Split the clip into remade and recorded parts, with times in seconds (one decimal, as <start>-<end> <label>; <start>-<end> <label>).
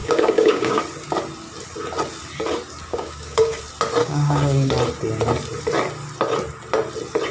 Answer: 0.0-0.8 remade; 0.8-2.9 recorded; 2.9-3.6 remade; 3.6-4.0 recorded; 4.0-4.7 remade; 4.7-7.3 recorded